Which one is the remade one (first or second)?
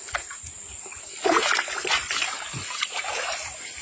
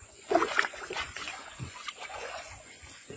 second